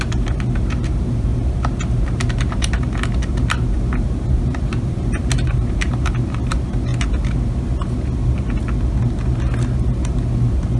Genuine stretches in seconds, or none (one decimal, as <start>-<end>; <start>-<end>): 6.9-10.1